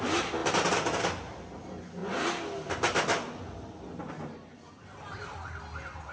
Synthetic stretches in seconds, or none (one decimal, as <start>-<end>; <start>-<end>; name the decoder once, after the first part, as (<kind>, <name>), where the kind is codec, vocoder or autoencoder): none